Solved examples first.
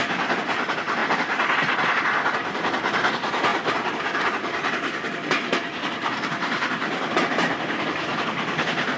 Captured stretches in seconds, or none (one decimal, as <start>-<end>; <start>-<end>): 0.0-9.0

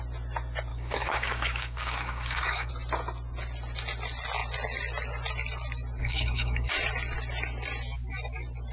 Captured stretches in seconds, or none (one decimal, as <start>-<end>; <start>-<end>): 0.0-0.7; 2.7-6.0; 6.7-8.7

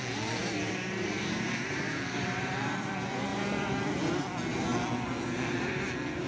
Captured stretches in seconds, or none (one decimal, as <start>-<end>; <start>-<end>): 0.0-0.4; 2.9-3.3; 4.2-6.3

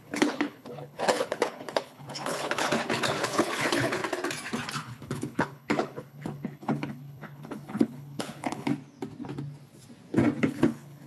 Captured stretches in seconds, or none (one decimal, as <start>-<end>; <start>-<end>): 4.0-4.8; 8.7-10.4

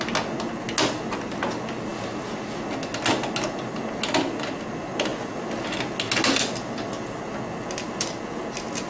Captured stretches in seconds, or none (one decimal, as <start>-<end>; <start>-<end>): 0.0-8.9

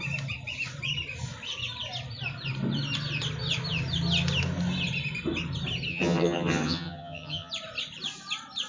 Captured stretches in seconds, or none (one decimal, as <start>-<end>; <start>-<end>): 0.0-5.9; 7.5-8.7